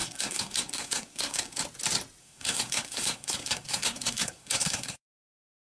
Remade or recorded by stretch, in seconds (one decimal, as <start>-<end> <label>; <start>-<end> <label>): 0.0-1.6 remade; 1.6-2.2 recorded; 2.2-5.7 remade